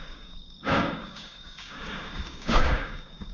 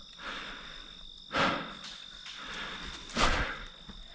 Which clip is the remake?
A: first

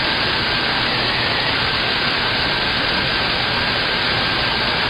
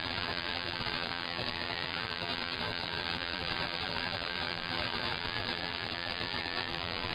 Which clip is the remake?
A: second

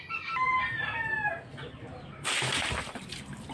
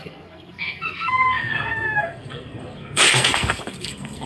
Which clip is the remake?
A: second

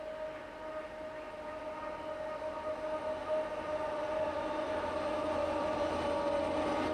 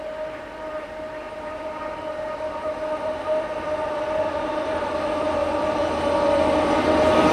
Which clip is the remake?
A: second